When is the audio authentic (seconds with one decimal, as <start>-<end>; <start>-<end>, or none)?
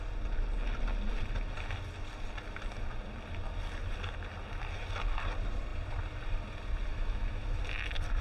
0.0-6.9; 7.6-8.2